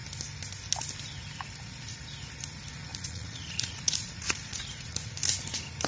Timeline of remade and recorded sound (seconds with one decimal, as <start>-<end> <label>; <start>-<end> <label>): 0.0-2.9 recorded; 2.9-5.1 remade; 5.1-5.9 recorded